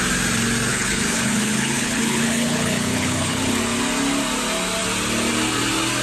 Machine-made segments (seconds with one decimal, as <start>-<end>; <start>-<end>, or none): 0.7-3.6